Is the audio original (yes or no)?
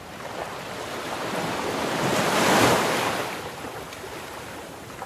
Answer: yes